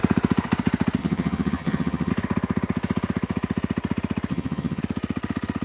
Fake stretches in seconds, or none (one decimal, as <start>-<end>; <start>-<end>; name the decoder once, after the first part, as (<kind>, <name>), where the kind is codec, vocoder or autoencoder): 1.0-2.1 (vocoder, HiFi-GAN); 4.3-4.8